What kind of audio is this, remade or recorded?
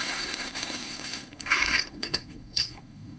remade